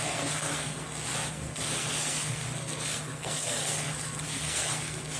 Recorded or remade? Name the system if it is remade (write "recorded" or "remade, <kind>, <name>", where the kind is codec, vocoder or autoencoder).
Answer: remade, codec, SNAC